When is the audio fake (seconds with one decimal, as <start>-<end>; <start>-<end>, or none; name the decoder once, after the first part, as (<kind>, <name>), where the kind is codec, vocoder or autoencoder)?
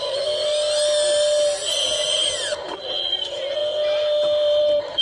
none